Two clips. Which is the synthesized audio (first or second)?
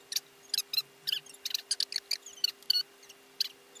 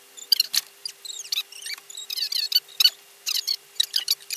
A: second